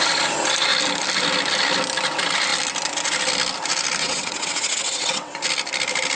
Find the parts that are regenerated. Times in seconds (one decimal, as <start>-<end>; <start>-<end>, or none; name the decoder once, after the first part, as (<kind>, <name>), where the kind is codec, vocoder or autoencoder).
4.0-5.4 (vocoder, WaveNeXt)